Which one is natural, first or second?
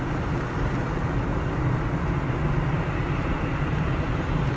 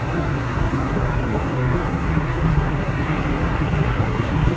first